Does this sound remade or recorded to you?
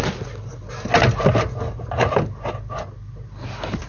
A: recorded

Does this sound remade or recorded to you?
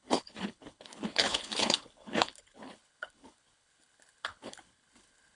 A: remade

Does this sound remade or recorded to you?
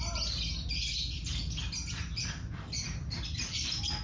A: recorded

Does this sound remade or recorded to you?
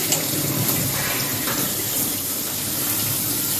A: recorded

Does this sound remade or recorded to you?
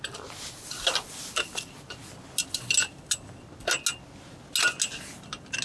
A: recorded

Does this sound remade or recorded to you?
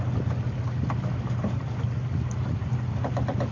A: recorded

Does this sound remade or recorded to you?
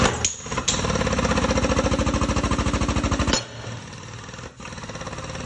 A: recorded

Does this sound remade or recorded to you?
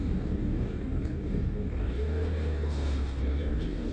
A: remade